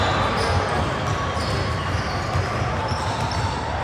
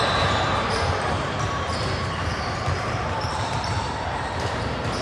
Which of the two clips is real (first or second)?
first